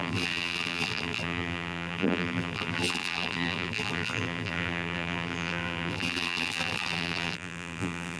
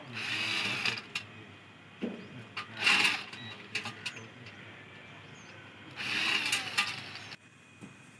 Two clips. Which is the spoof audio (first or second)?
first